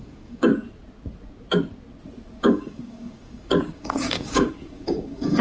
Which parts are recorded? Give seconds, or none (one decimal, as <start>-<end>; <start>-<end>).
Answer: 0.5-2.4